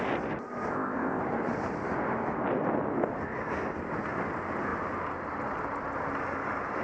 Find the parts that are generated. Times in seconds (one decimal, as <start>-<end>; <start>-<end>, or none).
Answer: 0.7-1.2